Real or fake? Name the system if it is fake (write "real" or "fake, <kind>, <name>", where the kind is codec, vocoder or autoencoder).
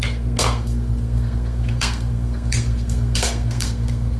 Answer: fake, codec, SNAC